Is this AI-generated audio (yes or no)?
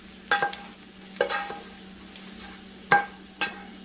no